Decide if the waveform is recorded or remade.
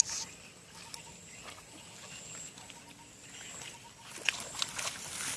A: recorded